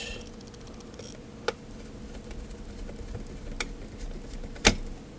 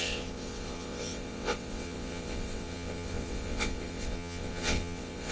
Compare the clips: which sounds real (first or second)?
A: first